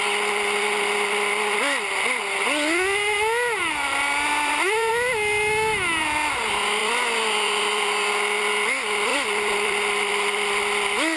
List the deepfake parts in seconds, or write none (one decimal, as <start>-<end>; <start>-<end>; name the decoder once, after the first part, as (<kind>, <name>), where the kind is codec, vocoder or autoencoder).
3.6-4.9 (vocoder, BigVGAN v2); 6.8-7.9; 9.1-10.1